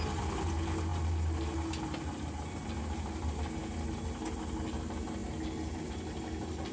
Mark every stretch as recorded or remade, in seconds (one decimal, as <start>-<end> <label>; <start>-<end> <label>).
0.0-6.7 recorded